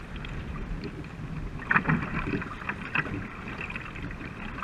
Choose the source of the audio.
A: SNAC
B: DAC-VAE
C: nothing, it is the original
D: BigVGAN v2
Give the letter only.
C